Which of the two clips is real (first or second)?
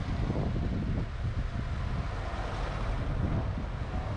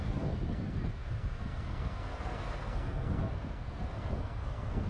first